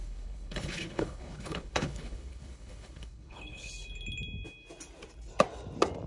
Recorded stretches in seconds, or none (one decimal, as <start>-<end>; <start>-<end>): 3.7-6.1